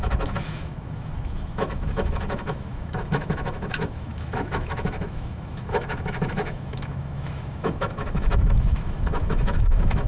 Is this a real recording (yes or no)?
no